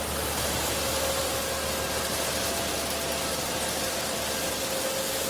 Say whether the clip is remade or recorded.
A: recorded